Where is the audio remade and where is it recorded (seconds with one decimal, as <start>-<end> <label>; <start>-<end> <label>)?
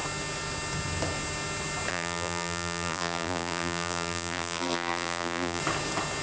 0.0-1.9 recorded; 1.9-5.6 remade; 5.6-6.2 recorded